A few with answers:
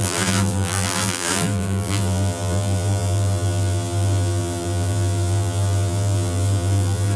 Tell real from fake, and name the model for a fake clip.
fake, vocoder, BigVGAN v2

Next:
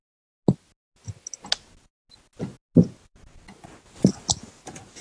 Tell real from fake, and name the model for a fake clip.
real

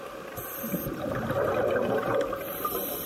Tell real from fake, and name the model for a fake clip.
real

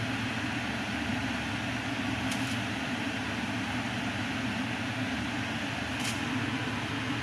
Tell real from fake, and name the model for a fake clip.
real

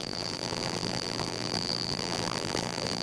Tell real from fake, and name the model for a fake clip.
fake, vocoder, BigVGAN v2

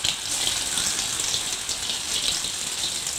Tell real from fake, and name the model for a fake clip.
real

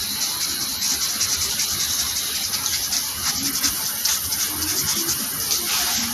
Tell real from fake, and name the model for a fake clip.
real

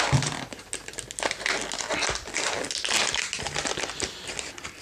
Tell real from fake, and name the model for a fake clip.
real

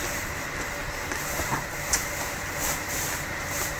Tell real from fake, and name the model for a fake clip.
fake, vocoder, BigVGAN v2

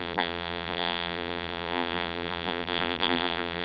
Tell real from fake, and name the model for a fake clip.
fake, vocoder, BigVGAN v2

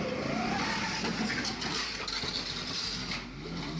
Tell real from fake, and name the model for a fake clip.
real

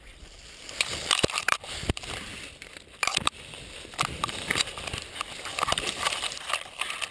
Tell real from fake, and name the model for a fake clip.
fake, vocoder, BigVGAN v2